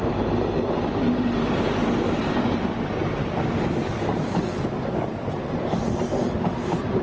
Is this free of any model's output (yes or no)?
yes